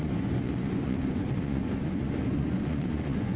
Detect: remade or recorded remade